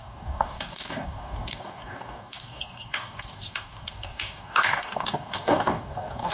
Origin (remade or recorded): remade